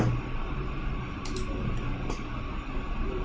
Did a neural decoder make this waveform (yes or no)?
no